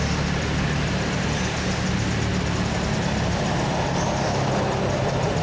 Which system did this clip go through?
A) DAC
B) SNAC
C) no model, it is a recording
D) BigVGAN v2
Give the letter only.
C